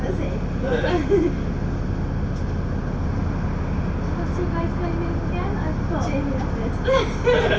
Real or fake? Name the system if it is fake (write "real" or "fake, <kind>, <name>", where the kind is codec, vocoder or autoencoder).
real